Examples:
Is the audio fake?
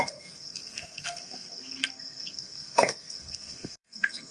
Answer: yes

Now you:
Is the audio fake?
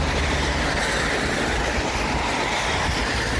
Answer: no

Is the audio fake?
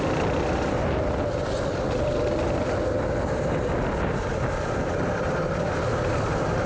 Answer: no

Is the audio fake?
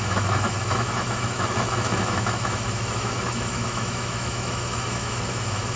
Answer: yes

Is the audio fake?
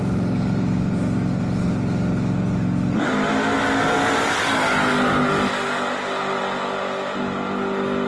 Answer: no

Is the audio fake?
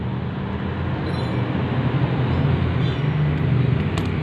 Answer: no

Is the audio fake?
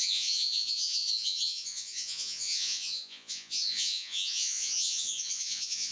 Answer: yes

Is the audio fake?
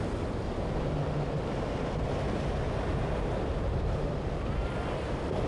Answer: no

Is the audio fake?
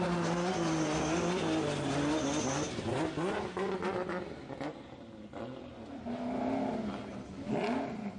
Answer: no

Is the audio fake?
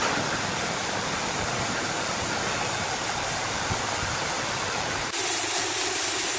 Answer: no